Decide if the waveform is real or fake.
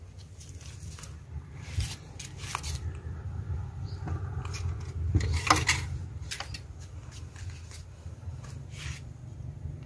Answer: real